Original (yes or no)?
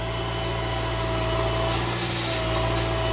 yes